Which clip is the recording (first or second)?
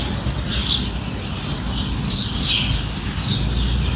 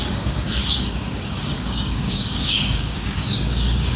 first